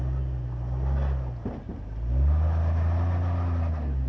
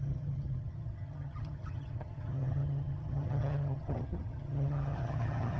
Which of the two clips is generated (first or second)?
second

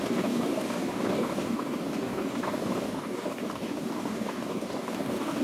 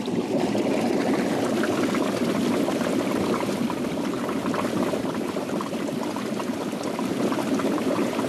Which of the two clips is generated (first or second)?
first